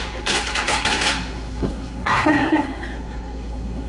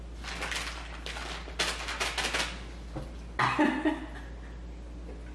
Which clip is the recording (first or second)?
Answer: second